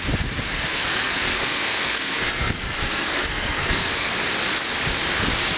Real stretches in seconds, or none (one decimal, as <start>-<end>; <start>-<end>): 0.0-0.7; 4.1-5.6